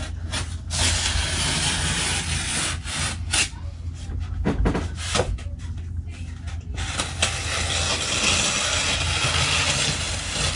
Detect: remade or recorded recorded